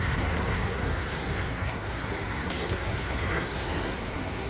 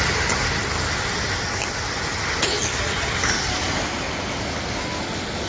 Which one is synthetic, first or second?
first